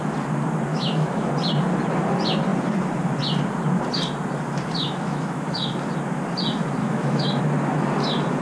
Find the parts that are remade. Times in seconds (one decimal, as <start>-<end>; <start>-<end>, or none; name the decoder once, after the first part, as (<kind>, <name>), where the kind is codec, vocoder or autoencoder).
0.7-1.3 (autoencoder, DAC-VAE); 4.8-5.7; 6.8-7.4